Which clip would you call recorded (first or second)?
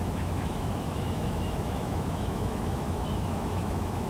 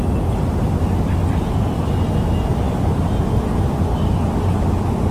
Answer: second